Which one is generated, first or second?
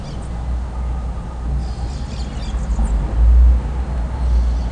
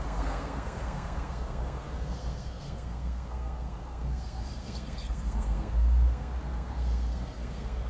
second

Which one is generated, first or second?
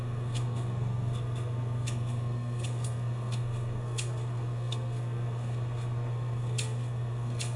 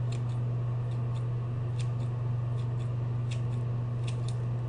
first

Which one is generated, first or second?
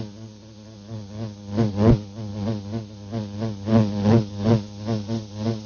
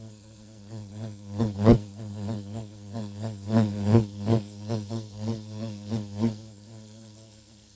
second